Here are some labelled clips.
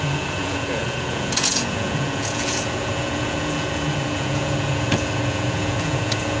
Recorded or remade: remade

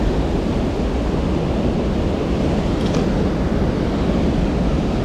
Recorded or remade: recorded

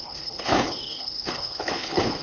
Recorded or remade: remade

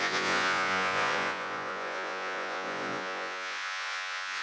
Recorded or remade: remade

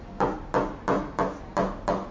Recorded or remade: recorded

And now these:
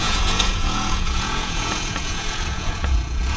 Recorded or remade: remade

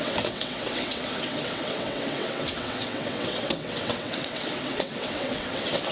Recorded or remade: remade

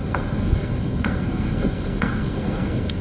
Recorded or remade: remade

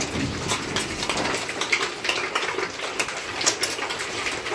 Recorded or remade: recorded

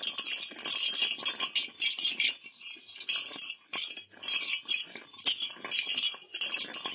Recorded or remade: recorded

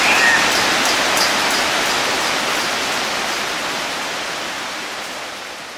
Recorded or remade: recorded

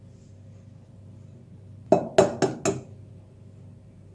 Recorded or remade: recorded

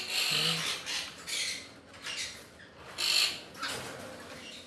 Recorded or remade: recorded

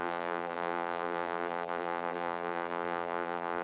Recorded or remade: remade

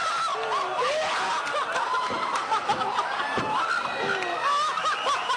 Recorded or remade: recorded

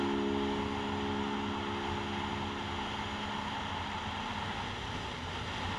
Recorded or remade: recorded